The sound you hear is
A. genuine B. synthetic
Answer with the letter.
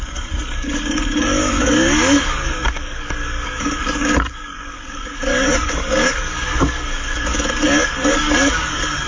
B